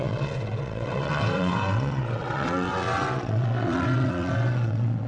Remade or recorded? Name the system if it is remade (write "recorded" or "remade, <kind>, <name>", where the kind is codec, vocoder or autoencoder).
remade, vocoder, WaveNeXt